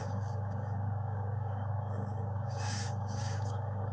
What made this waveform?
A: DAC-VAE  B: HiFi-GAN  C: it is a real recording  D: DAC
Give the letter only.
D